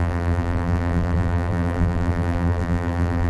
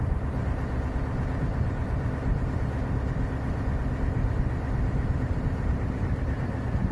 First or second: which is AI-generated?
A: first